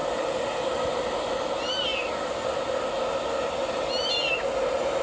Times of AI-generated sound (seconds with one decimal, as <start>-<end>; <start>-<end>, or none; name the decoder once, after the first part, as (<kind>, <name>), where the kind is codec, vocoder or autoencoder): none